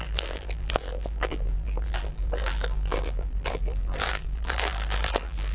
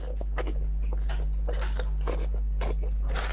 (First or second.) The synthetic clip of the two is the first